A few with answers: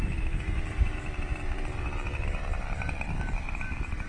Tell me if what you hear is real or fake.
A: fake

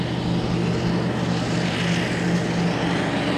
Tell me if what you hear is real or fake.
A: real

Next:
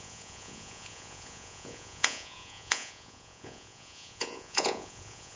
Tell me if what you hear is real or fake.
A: fake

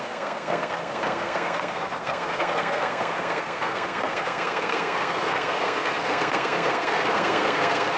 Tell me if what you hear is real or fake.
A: fake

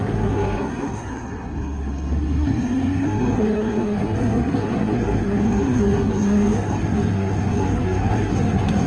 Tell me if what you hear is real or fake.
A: fake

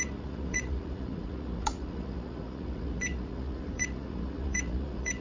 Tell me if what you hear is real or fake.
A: fake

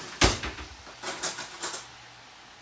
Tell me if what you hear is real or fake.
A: real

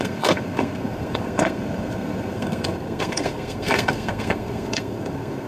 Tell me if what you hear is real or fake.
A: fake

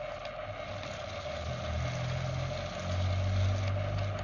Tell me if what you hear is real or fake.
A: real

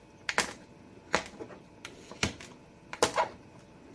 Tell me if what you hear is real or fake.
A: real